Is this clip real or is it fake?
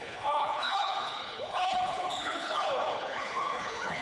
fake